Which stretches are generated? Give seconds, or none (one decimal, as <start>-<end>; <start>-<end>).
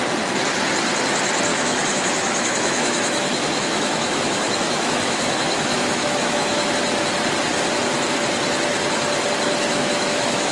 1.5-6.7; 9.7-10.5